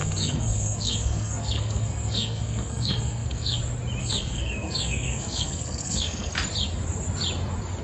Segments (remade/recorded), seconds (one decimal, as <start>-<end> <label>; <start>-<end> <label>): 0.0-3.6 remade; 3.6-4.0 recorded; 4.0-6.3 remade; 6.3-7.8 recorded